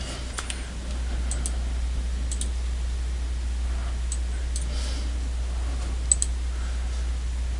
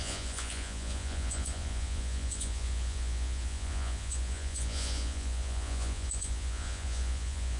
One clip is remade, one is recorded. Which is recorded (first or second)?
first